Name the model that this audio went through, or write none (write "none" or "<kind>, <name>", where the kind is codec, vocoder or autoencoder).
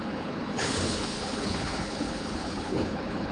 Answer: codec, HILCodec